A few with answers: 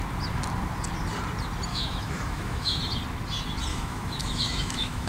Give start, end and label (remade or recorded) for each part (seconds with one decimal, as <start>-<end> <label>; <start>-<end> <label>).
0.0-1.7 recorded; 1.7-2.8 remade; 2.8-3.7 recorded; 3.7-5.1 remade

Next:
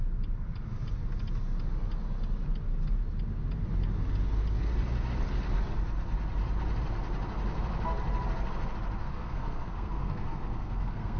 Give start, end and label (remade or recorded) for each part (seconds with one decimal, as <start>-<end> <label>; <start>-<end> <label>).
0.0-9.0 recorded; 9.0-11.2 remade

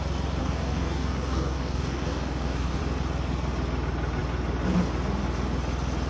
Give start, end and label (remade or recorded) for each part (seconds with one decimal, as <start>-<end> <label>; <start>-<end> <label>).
0.0-0.4 recorded; 0.4-2.8 remade; 2.8-6.1 recorded